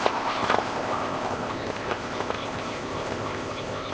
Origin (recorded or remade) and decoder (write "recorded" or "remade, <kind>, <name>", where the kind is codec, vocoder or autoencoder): remade, codec, ZipCodec